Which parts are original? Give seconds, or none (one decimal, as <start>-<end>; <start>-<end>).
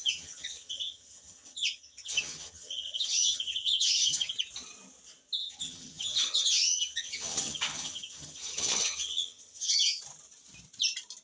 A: 4.3-5.4; 10.0-11.2